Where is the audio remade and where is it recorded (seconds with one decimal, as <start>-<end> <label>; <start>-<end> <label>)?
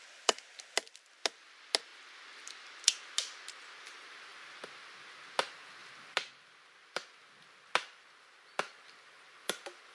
0.0-9.9 recorded